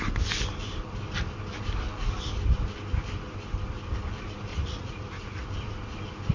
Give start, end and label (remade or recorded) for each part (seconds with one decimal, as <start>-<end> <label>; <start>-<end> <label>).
0.0-4.5 recorded; 4.5-5.5 remade; 5.5-6.3 recorded

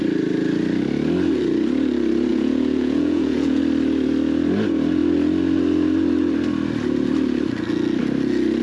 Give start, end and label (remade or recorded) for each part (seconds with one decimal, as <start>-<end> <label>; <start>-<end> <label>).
0.0-2.3 recorded; 2.3-3.6 remade; 3.6-8.6 recorded